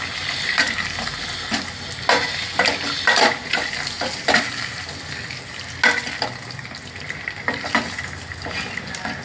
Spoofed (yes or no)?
no